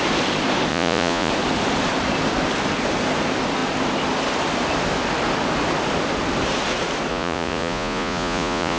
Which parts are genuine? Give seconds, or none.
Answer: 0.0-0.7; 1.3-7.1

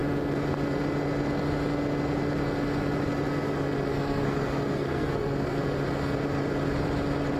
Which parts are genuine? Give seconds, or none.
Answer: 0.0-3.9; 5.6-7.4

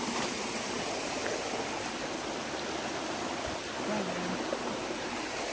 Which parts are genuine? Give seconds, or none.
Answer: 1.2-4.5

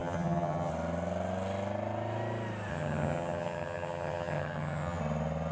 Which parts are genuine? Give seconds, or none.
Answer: 0.7-2.7; 5.0-5.5

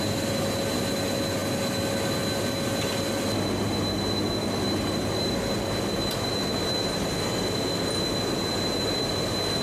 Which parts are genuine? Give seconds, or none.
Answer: 0.0-9.6